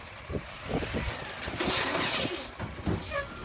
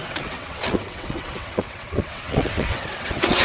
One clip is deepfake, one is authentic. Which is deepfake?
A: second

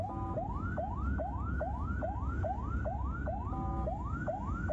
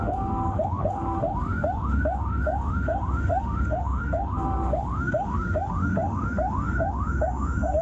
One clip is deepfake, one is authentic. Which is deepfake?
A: second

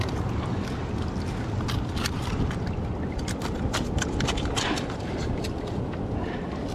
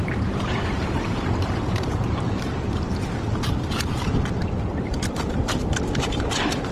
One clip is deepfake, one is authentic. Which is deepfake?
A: second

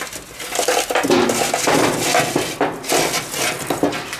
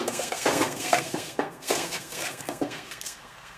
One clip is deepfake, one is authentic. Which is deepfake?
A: second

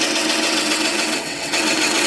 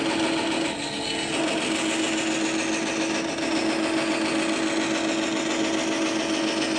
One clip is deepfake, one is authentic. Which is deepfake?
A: first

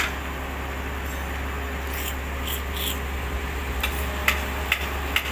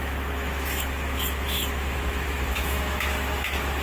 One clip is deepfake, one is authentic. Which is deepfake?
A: second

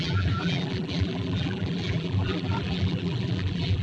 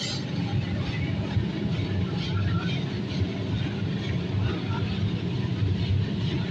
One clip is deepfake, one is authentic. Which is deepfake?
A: first